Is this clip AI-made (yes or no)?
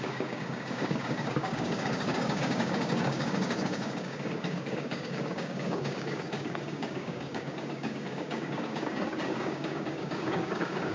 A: yes